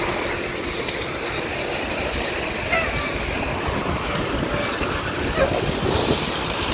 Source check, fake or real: real